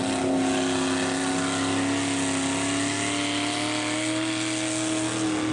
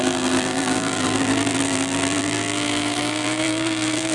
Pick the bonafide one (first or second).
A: first